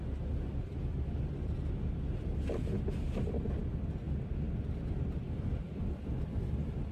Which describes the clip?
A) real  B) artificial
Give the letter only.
A